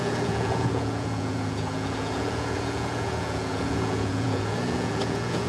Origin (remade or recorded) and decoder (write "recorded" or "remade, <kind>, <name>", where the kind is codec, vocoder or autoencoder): remade, vocoder, Vocos